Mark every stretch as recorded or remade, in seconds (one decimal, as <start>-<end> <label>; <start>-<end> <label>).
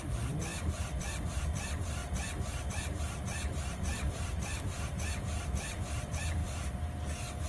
0.0-2.0 remade; 2.0-2.7 recorded; 2.7-6.4 remade; 6.4-7.5 recorded